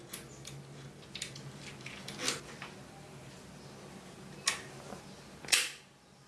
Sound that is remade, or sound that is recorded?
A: recorded